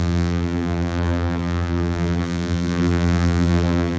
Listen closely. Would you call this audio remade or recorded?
remade